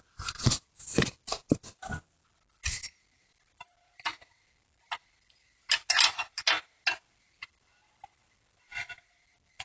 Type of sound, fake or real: real